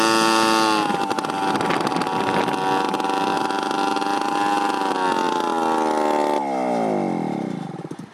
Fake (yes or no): no